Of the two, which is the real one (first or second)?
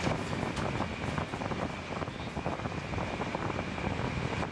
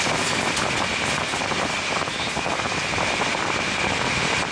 first